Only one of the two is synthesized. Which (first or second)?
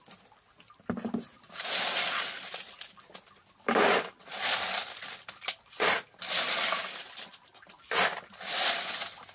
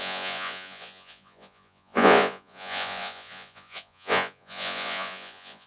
second